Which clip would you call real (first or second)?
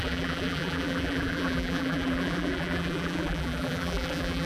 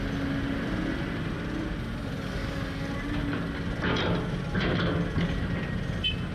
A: second